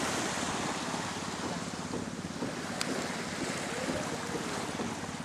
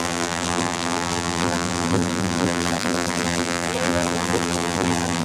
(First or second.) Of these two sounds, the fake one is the second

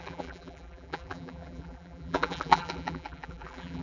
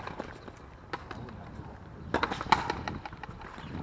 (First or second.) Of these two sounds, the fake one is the first